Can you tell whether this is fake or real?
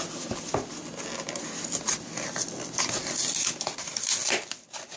real